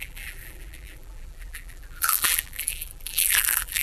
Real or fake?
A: fake